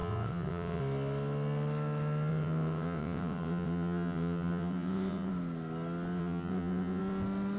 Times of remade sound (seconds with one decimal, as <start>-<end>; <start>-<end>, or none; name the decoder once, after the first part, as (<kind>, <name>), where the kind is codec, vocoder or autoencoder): 0.0-0.8 (vocoder, WaveNeXt); 2.3-5.3; 6.2-7.0